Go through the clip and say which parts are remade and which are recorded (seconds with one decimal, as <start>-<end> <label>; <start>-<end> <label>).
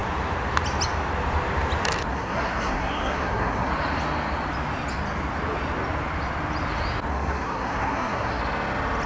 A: 0.0-2.1 recorded; 2.1-3.7 remade; 3.7-7.1 recorded; 7.1-8.4 remade; 8.4-9.1 recorded